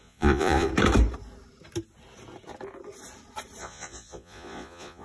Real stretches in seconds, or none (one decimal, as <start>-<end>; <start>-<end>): 0.7-3.6